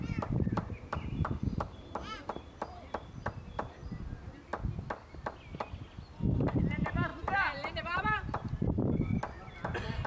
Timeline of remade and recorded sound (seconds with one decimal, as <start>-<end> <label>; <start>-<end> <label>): 0.0-3.8 remade; 3.8-6.5 recorded; 6.5-9.1 remade; 9.1-10.1 recorded